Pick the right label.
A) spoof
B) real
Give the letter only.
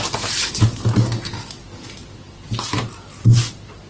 B